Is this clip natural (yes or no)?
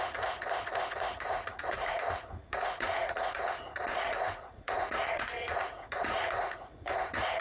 no